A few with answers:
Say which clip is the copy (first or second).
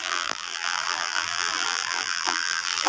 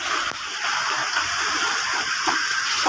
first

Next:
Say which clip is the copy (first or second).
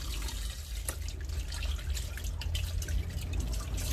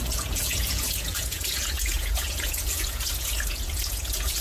second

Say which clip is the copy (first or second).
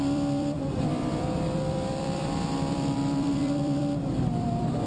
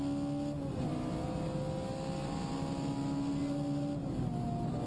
first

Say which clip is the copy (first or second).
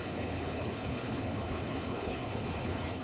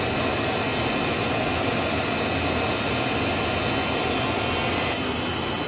first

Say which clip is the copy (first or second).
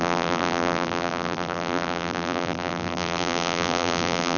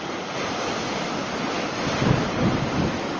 first